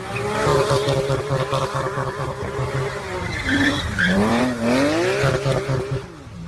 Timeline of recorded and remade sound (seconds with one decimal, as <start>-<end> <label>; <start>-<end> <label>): 0.0-0.5 recorded; 0.5-4.4 remade; 4.4-6.5 recorded